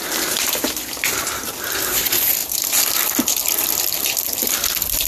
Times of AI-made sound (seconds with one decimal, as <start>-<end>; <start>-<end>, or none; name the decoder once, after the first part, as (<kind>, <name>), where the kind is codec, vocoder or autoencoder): none